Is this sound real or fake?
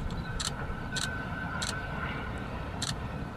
fake